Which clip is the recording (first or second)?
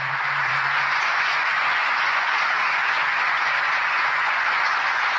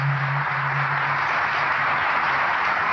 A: second